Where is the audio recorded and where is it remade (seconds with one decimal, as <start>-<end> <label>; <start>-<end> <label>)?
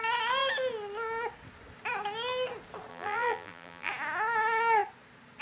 0.0-2.9 recorded; 2.9-3.9 remade; 3.9-5.4 recorded